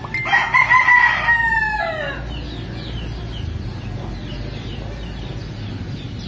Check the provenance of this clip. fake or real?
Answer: real